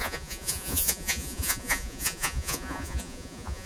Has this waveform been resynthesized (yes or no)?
yes